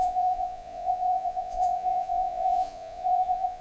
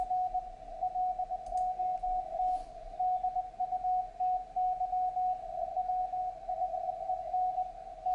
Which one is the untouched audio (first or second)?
second